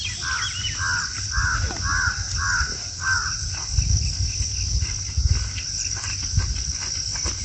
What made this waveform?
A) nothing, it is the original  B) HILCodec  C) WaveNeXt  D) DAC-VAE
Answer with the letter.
A